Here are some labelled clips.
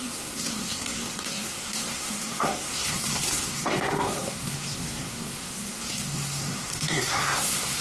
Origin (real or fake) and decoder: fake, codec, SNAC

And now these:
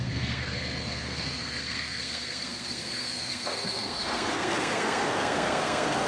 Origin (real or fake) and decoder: fake, codec, SNAC